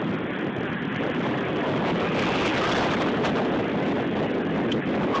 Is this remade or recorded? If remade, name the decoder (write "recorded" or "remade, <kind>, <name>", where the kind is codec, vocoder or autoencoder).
recorded